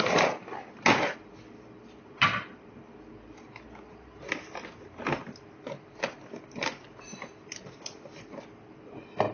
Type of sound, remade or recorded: recorded